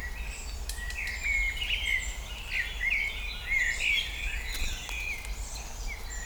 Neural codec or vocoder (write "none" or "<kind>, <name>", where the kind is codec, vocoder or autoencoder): none